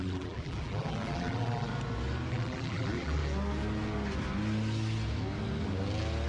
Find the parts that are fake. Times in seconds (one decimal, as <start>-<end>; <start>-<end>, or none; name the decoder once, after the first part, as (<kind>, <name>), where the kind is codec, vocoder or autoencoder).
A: 0.0-1.7 (vocoder, BigVGAN v2); 2.3-3.2